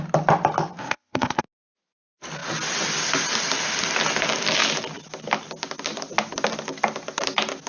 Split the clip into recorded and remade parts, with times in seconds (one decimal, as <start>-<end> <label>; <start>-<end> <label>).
0.0-0.8 recorded; 0.8-1.4 remade; 1.4-7.7 recorded